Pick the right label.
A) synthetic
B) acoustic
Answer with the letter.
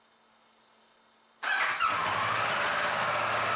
B